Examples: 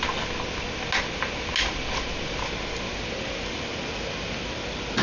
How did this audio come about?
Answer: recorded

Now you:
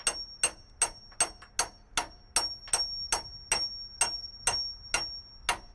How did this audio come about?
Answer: recorded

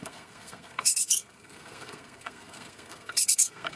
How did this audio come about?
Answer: remade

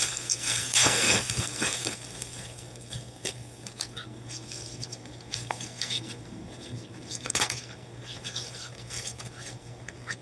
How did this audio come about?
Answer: remade